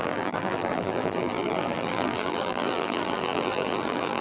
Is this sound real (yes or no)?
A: no